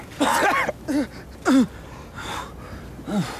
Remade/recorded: recorded